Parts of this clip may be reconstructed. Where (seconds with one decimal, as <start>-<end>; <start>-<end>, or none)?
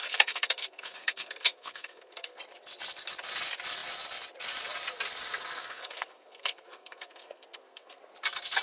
0.0-2.4; 5.6-8.0